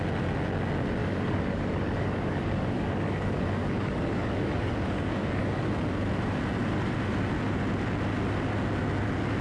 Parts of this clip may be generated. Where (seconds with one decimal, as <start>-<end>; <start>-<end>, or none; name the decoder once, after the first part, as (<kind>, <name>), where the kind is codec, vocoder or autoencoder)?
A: 1.0-5.6 (codec, DAC)